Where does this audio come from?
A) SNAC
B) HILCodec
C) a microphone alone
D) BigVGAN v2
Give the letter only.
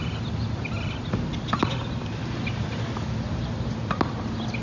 C